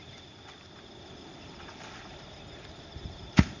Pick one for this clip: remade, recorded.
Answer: recorded